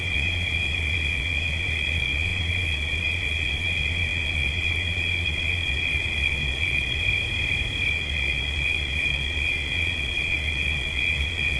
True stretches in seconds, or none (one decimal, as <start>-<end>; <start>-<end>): 7.0-7.9